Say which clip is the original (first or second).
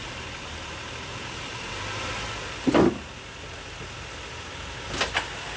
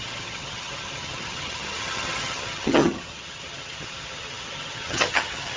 first